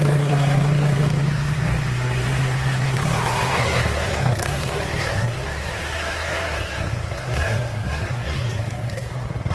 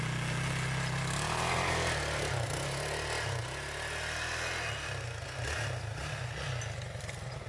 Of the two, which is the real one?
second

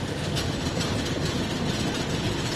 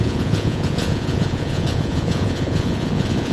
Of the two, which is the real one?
first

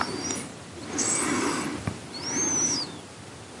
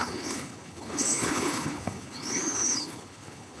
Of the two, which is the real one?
first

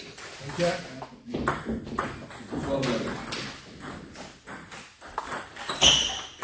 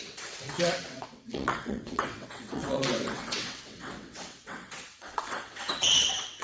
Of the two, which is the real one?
first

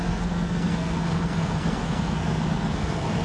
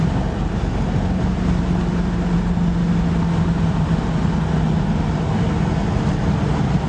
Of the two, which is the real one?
second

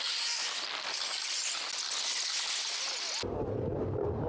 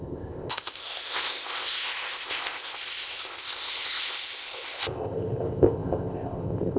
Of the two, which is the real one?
first